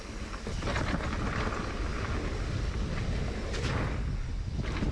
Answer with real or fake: real